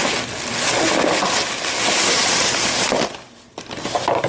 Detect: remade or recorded recorded